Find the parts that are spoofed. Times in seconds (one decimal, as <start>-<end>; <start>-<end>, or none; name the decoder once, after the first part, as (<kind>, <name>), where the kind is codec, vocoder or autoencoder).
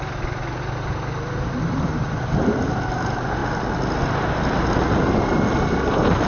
none